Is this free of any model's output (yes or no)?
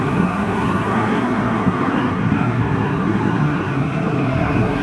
no